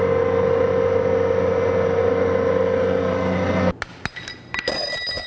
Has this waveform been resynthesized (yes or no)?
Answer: no